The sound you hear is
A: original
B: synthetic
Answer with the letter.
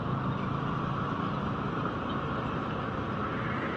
A